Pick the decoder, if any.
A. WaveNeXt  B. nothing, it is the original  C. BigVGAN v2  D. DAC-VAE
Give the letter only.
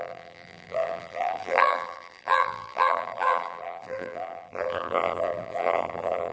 C